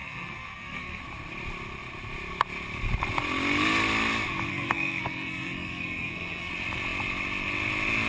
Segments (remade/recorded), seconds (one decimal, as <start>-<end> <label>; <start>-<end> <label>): 0.0-1.0 remade; 1.0-4.5 recorded; 4.5-6.5 remade; 6.5-8.1 recorded